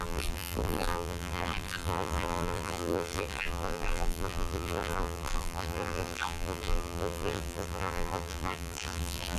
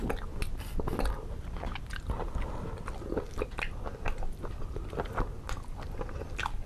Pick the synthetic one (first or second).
first